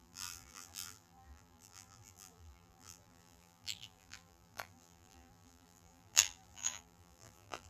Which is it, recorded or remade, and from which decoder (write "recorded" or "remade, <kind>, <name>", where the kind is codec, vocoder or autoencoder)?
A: remade, vocoder, BigVGAN v2